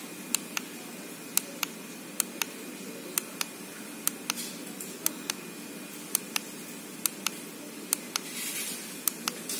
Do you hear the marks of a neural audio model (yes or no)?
no